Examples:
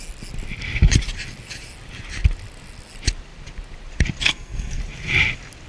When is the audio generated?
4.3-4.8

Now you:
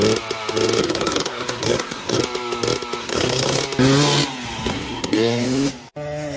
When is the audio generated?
0.8-2.2; 3.0-3.6; 4.7-5.7

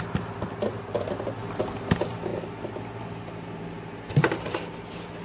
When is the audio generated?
none

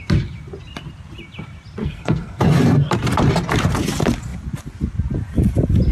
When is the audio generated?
1.8-2.4

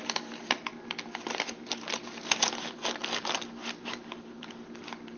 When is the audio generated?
none

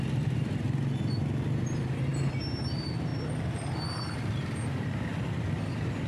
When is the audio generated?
none

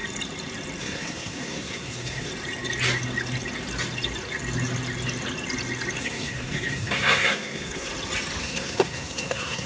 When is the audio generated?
0.8-2.3; 6.0-7.9; 8.4-9.7

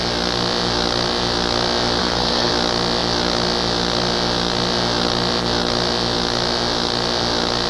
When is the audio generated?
2.0-2.5